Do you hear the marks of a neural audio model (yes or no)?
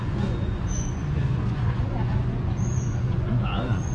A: yes